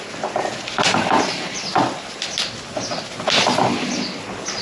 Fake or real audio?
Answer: real